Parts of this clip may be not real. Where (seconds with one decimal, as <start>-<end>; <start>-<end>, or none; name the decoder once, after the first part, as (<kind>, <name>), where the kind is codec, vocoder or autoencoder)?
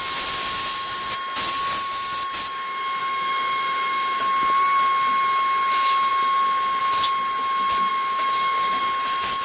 3.0-4.2 (codec, DAC); 7.9-8.8